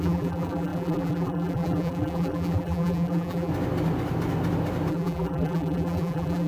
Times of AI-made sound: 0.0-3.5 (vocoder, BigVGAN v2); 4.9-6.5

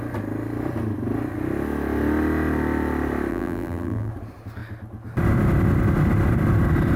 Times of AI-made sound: 3.3-4.1 (vocoder, BigVGAN v2)

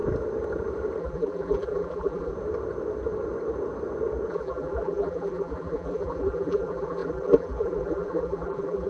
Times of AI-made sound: 1.0-2.3 (vocoder, BigVGAN v2); 4.3-8.9

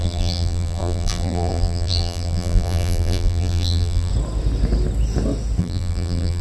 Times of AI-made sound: 0.0-4.1 (vocoder, BigVGAN v2); 5.6-6.4

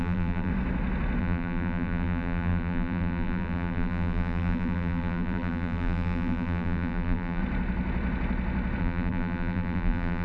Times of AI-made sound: 0.0-0.5 (vocoder, BigVGAN v2); 1.2-7.4; 8.8-10.2

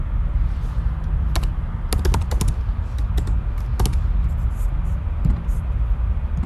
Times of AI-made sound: none

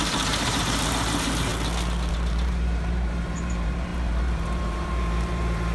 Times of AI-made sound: 0.0-1.5 (vocoder, BigVGAN v2); 2.1-5.7